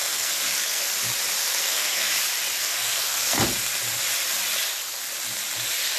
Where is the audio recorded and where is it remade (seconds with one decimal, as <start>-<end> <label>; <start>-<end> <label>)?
0.0-0.9 remade; 0.9-1.4 recorded; 1.4-2.1 remade; 2.1-2.6 recorded; 2.6-3.4 remade; 3.4-6.0 recorded